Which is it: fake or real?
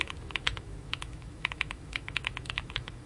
fake